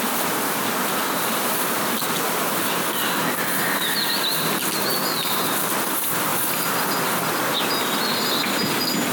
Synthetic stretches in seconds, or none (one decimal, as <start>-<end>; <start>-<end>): 1.0-3.2; 6.3-6.8